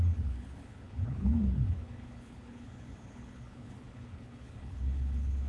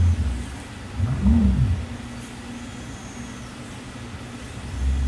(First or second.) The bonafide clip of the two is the second